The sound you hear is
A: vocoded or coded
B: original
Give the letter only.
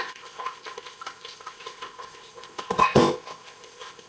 A